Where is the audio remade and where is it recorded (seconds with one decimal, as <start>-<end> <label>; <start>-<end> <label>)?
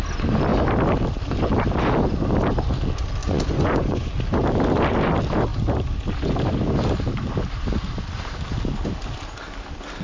0.0-3.2 recorded; 3.2-4.1 remade; 4.1-10.0 recorded